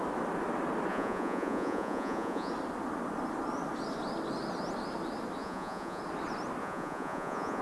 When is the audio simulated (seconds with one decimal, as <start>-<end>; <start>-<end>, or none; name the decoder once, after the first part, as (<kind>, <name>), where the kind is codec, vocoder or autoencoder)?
0.9-2.5 (vocoder, Vocos); 5.4-6.0; 6.6-7.6